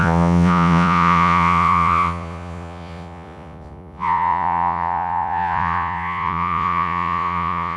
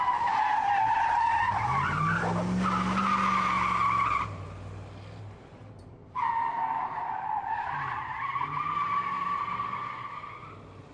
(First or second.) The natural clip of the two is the second